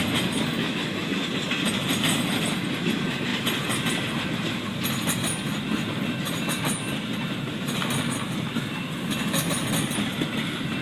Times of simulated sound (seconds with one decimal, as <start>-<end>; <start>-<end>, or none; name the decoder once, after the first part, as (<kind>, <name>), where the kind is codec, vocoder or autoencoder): 0.6-1.2 (autoencoder, DAC-VAE)